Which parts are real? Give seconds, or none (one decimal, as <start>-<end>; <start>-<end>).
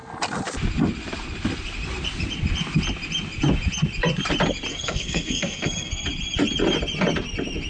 0.0-4.7; 5.9-7.7